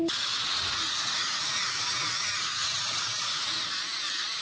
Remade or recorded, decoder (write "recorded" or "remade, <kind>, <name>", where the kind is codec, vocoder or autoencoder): remade, vocoder, Vocos